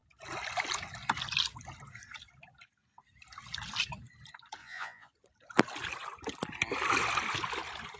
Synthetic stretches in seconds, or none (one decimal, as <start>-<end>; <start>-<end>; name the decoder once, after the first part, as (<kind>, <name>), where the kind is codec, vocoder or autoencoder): 4.6-5.1 (vocoder, Vocos)

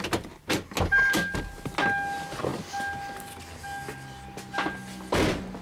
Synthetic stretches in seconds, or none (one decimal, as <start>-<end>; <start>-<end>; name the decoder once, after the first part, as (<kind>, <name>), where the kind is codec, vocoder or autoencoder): none

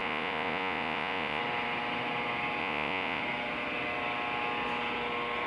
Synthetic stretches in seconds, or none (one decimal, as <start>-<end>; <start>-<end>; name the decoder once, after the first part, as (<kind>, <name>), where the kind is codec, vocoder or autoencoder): 0.0-1.4 (vocoder, Vocos); 2.6-3.2

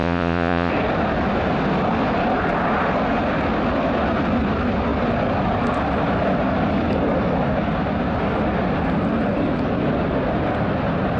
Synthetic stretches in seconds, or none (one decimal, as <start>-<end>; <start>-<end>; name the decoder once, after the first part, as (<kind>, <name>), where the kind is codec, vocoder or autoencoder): 0.0-0.7 (vocoder, Vocos)

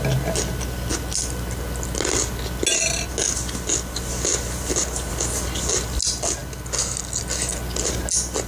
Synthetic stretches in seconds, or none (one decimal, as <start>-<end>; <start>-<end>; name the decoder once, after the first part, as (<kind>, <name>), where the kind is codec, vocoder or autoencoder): none

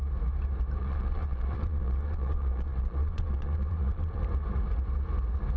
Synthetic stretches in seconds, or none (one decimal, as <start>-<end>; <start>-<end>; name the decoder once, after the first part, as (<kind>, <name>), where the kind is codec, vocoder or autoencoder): 0.8-4.2 (vocoder, Vocos)

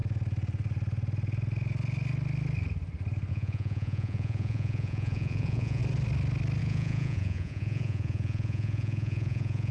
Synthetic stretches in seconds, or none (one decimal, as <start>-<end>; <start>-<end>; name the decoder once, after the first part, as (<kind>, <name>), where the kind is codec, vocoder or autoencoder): 3.3-5.8 (vocoder, Vocos); 6.6-9.7

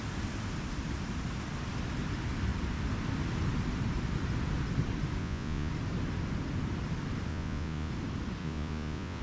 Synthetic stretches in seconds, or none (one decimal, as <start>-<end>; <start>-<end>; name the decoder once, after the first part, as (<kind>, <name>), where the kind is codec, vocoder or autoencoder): 5.2-5.7 (vocoder, Vocos); 7.3-7.9; 8.4-9.2